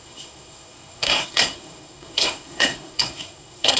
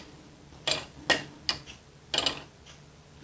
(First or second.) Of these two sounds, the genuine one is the second